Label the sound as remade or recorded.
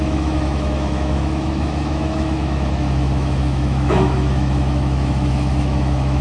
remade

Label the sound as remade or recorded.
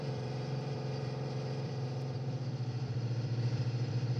remade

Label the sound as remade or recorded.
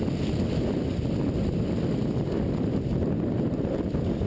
recorded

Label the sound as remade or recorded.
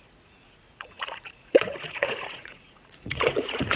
remade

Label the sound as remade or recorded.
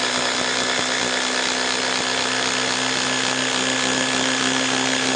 recorded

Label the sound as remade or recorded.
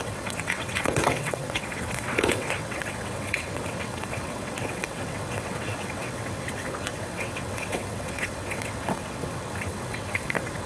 remade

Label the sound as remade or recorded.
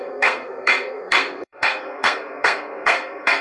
remade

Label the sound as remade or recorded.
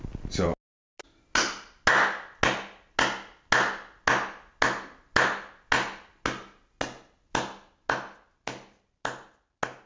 recorded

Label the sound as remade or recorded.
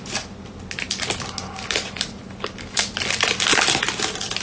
recorded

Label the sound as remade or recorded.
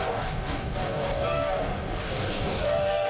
remade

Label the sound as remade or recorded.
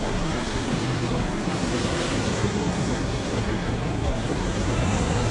remade